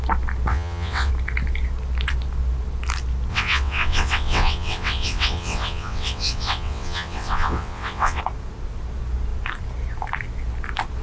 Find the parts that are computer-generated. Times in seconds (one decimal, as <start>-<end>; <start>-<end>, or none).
0.5-1.1; 3.3-8.2